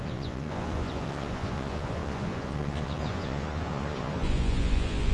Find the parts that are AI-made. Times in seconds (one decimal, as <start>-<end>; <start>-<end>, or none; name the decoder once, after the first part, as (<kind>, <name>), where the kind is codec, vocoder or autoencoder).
0.0-5.1 (vocoder, Vocos)